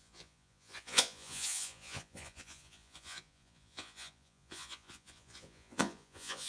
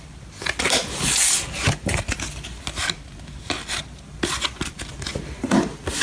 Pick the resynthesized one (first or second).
first